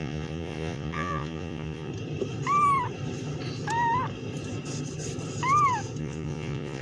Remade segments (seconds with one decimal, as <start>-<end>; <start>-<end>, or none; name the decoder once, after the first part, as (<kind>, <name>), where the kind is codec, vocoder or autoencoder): 0.0-1.9 (vocoder, Vocos); 6.0-6.8